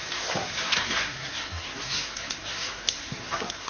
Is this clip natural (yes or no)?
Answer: no